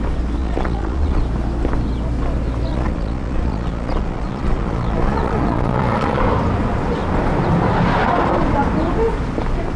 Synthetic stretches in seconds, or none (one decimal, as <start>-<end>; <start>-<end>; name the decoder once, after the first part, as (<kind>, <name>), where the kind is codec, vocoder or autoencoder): 0.4-1.2 (vocoder, Vocos); 2.7-6.2